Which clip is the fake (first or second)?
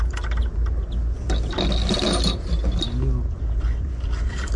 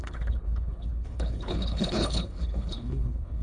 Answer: second